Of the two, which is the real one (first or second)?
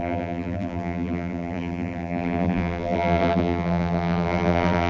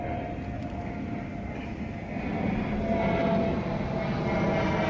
second